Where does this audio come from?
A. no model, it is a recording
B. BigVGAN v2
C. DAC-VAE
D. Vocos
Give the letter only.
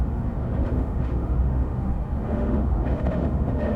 C